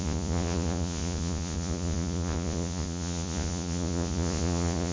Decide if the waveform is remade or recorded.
remade